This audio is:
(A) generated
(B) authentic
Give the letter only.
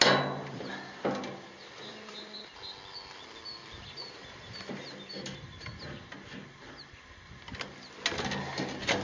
B